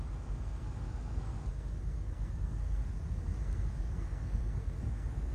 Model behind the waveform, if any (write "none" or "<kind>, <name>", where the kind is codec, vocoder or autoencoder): codec, SNAC